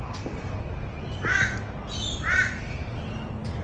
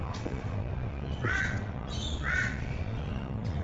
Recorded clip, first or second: first